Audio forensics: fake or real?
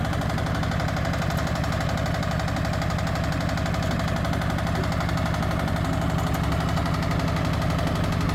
real